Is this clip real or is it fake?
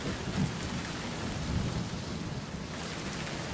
real